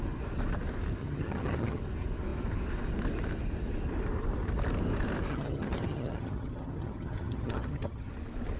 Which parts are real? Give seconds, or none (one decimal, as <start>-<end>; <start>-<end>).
0.0-1.0; 1.8-5.3; 8.1-8.6